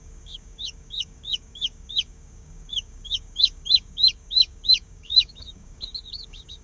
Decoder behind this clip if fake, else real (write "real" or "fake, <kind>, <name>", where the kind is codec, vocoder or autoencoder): fake, codec, DAC